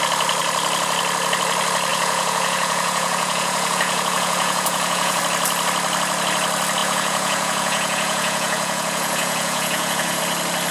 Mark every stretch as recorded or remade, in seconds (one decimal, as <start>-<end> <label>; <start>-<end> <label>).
0.0-1.9 recorded; 1.9-5.2 remade; 5.2-6.8 recorded; 6.8-10.2 remade; 10.2-10.7 recorded